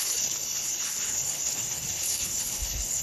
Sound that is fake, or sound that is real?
fake